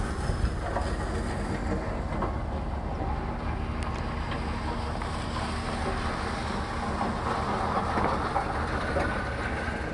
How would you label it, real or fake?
real